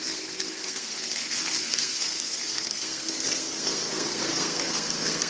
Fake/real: fake